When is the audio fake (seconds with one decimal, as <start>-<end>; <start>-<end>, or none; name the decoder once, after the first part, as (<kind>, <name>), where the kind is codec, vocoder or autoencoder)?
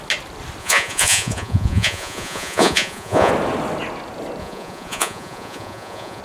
0.6-3.3 (vocoder, Vocos); 4.4-6.2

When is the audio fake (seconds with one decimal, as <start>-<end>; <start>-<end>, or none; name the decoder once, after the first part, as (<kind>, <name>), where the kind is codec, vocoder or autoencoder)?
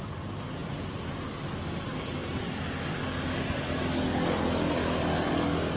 none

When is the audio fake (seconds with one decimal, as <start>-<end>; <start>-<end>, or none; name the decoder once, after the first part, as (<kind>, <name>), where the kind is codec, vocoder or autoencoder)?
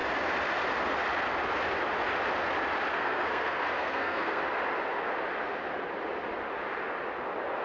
2.9-4.4 (codec, SNAC)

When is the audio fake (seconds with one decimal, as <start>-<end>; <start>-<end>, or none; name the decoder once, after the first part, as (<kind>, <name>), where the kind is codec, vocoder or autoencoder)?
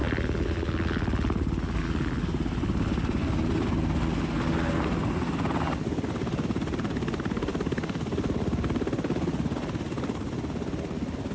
none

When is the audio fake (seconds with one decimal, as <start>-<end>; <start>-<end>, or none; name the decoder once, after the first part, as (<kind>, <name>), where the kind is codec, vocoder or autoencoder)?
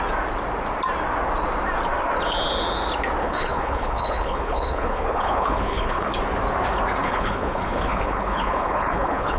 3.2-6.1 (codec, HILCodec); 7.0-9.4